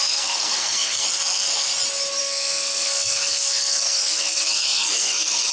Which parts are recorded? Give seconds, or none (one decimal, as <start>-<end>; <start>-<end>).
1.7-2.2